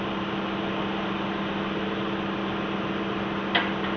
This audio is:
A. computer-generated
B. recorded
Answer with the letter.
B